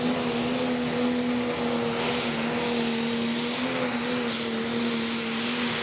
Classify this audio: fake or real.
real